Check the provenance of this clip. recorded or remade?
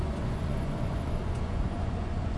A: remade